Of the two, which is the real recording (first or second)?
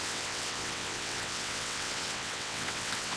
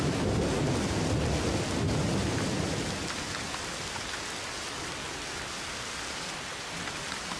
second